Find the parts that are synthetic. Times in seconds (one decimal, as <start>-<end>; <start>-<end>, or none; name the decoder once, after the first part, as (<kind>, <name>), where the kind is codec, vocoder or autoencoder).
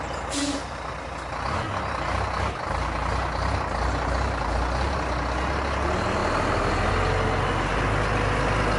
none